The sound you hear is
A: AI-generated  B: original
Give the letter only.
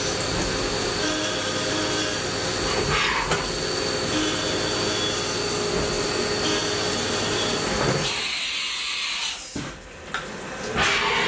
B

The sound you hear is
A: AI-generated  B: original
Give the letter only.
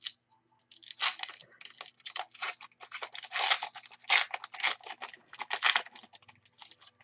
B